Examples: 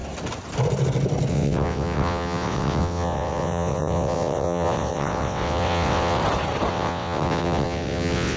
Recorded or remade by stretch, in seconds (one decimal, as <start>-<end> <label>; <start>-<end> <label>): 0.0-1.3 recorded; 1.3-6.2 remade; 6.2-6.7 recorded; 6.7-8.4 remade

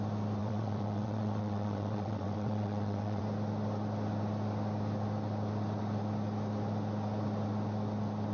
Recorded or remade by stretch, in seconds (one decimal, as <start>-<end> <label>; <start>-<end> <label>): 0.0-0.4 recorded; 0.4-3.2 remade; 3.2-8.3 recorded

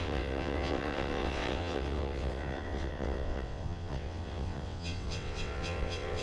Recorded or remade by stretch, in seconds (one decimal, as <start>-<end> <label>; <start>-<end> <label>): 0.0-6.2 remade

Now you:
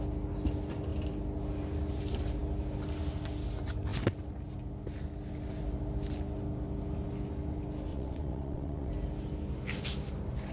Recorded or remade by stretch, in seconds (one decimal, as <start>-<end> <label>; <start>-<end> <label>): 0.0-7.9 recorded; 7.9-8.9 remade; 8.9-10.5 recorded